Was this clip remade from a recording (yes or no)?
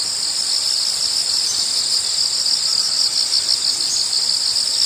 no